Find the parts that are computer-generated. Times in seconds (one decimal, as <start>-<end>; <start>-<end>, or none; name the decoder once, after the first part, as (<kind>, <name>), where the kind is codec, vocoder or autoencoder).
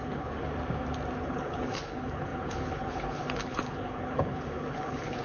0.0-0.4 (codec, HILCodec); 1.2-5.2